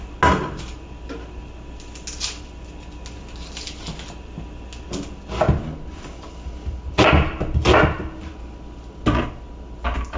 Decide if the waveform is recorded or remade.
recorded